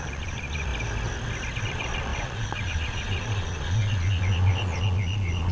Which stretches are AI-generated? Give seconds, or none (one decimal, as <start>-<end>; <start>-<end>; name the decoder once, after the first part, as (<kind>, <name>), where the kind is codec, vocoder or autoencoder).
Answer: 0.0-0.7 (vocoder, Vocos); 1.6-5.5